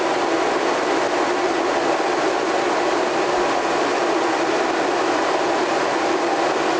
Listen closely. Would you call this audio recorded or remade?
recorded